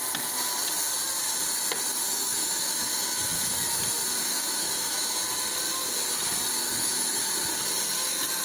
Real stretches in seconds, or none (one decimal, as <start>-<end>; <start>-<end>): 0.0-2.0; 3.5-4.2; 5.2-6.6; 7.3-8.4